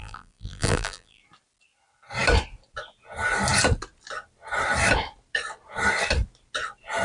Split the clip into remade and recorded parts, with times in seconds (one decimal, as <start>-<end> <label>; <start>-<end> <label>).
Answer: 0.0-1.2 remade; 1.2-7.0 recorded